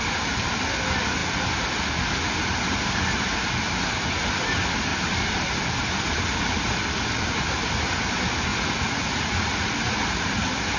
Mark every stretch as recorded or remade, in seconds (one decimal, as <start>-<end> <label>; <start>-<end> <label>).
0.0-8.5 recorded; 8.5-9.7 remade; 9.7-10.8 recorded